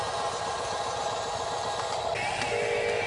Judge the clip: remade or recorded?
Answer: recorded